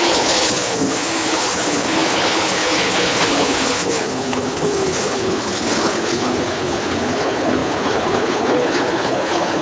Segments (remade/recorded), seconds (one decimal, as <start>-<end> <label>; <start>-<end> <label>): 0.0-9.6 remade